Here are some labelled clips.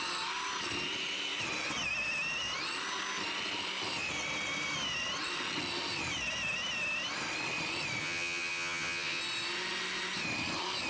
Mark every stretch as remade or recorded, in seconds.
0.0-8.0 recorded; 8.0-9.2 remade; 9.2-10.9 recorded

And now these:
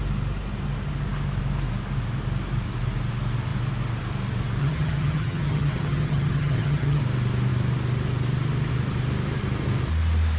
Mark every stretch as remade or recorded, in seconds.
0.0-4.6 recorded; 4.6-7.0 remade; 7.0-10.4 recorded